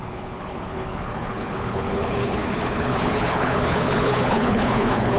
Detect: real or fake fake